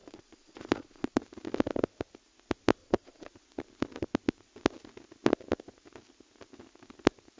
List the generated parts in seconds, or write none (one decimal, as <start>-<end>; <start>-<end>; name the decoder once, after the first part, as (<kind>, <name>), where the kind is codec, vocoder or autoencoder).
0.0-1.2 (vocoder, Vocos); 2.8-3.3